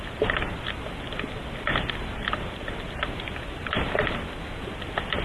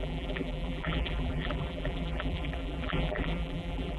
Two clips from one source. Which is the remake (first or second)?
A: second